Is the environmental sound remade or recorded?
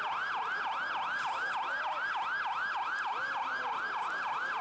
recorded